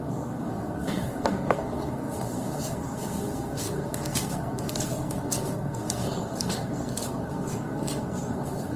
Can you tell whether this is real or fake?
fake